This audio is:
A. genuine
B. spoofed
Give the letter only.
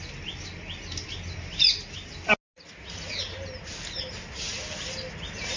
A